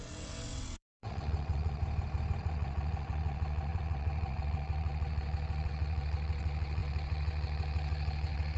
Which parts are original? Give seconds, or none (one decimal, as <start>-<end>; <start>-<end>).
1.8-2.4